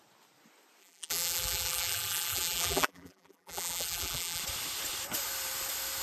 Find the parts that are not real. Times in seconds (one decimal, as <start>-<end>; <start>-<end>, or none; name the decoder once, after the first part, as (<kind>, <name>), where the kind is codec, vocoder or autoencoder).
0.8-4.4 (vocoder, BigVGAN v2)